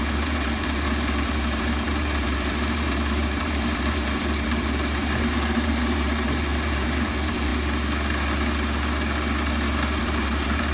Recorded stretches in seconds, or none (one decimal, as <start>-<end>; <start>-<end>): 7.5-10.0